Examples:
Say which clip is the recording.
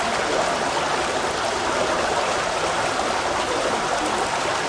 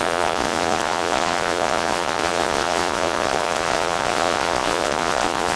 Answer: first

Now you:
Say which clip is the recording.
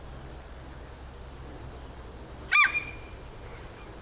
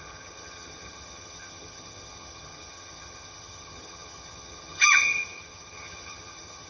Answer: first